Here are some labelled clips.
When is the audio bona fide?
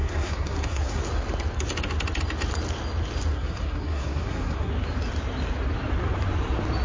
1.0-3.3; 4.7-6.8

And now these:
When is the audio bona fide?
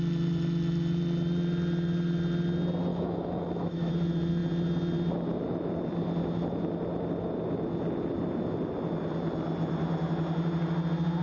0.0-2.9; 3.9-11.2